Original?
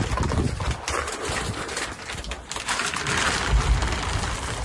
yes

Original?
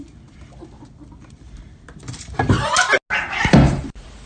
yes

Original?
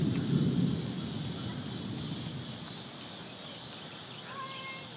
yes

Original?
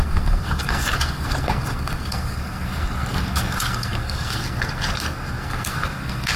no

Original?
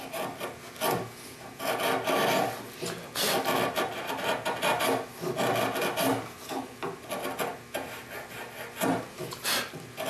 yes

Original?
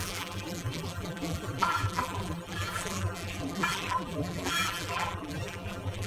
no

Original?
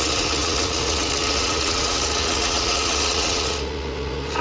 no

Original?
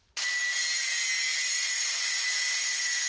yes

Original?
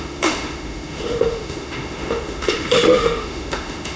no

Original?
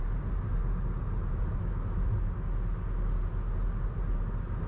yes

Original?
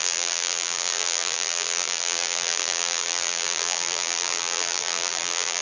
no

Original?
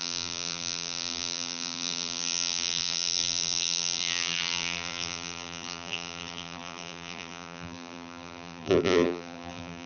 no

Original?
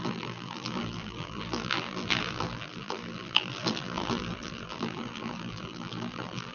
no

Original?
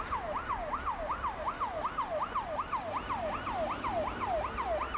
yes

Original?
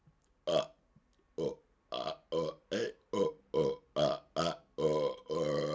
yes